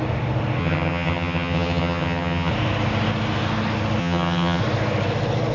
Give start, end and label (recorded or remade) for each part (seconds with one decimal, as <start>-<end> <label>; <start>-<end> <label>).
0.0-0.6 recorded; 0.6-2.5 remade; 2.5-4.0 recorded; 4.0-4.6 remade; 4.6-5.5 recorded